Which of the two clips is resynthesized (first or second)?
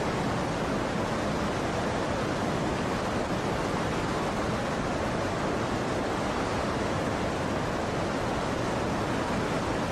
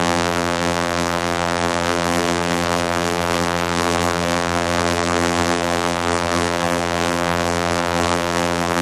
second